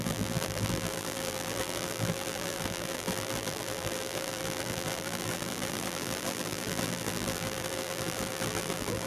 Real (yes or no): no